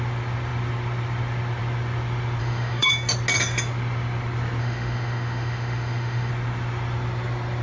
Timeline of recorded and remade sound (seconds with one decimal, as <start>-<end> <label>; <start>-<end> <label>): 0.0-2.4 recorded; 2.4-2.9 remade; 2.9-4.6 recorded; 4.6-6.3 remade; 6.3-7.6 recorded

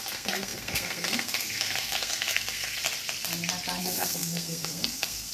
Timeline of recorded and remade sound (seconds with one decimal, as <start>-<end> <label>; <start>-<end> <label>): 0.0-2.8 remade; 2.8-3.8 recorded; 3.8-5.3 remade

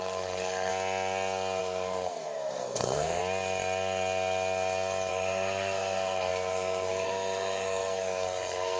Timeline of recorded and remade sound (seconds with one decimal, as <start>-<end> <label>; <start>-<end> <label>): 0.0-0.7 remade; 0.7-1.6 recorded; 1.6-3.2 remade; 3.2-5.1 recorded; 5.1-8.8 remade

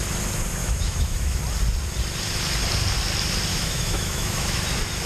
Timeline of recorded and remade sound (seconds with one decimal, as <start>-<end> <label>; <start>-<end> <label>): 0.0-0.6 recorded; 0.6-1.4 remade; 1.4-3.5 recorded; 3.5-4.6 remade; 4.6-5.1 recorded

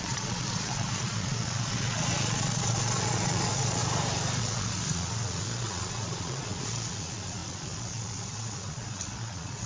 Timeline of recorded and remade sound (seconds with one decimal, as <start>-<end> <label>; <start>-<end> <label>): 0.0-3.8 remade; 3.8-4.4 recorded; 4.4-9.7 remade